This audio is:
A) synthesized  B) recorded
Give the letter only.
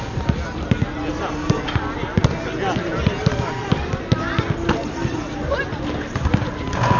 B